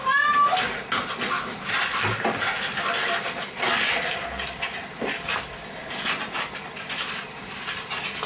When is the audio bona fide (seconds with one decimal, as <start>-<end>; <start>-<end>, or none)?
0.0-8.3